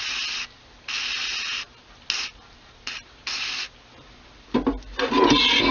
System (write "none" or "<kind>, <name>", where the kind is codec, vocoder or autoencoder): none